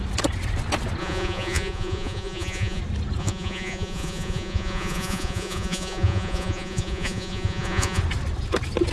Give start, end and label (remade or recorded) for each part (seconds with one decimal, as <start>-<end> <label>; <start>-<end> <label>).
0.0-1.0 recorded; 1.0-2.8 remade; 2.8-3.2 recorded; 3.2-8.0 remade; 8.0-8.9 recorded